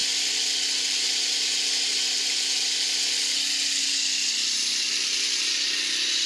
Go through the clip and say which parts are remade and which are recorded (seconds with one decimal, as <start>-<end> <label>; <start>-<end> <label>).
0.0-6.3 recorded